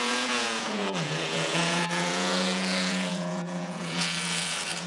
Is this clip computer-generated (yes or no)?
yes